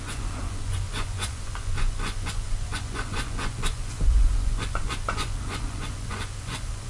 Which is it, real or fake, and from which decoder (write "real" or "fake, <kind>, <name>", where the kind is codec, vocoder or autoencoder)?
fake, vocoder, Vocos